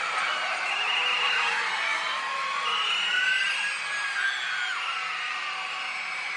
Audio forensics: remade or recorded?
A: recorded